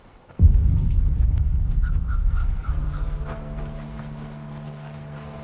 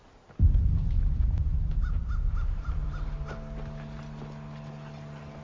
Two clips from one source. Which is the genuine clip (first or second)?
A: second